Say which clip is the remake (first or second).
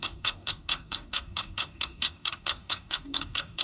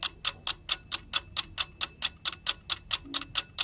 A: first